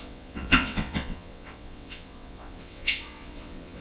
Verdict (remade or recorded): remade